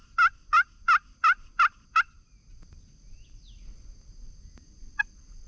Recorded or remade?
recorded